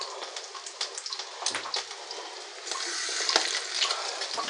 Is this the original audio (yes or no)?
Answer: yes